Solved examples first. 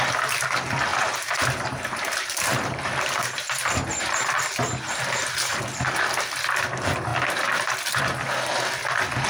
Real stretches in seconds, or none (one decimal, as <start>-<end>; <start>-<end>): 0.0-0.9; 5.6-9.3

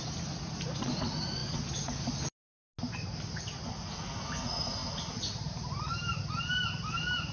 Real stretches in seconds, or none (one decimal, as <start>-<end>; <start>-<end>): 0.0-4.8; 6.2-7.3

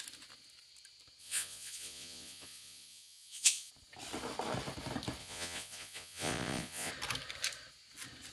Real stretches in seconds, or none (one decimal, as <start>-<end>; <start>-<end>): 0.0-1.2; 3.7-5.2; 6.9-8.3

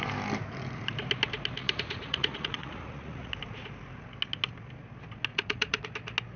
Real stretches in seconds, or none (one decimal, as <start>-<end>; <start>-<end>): 0.0-1.6; 3.3-5.3; 5.8-6.4

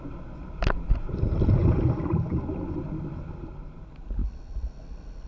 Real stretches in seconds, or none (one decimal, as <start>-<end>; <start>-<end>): 0.0-5.3